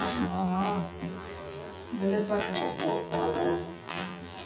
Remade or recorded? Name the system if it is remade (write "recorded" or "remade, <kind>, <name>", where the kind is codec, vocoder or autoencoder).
remade, vocoder, BigVGAN v2